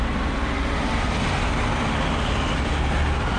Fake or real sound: real